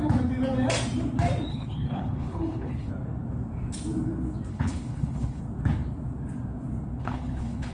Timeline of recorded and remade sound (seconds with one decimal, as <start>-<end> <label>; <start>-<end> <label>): 0.0-1.5 recorded; 1.5-2.9 remade; 2.9-4.5 recorded; 4.5-5.4 remade; 5.4-7.0 recorded; 7.0-7.7 remade